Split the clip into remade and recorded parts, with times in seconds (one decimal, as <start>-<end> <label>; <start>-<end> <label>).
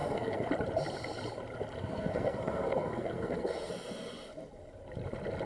0.0-0.5 remade; 0.5-1.8 recorded; 1.8-3.7 remade; 3.7-5.5 recorded